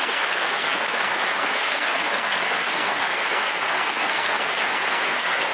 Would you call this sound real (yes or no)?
no